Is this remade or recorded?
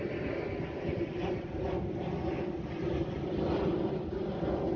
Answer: recorded